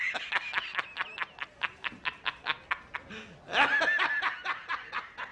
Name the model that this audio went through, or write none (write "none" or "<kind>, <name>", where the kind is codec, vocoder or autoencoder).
none